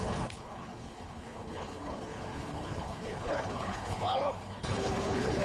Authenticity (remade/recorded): remade